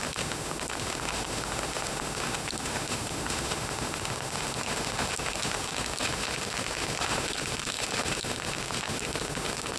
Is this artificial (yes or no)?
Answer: yes